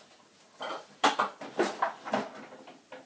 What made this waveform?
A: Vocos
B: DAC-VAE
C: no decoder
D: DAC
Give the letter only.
C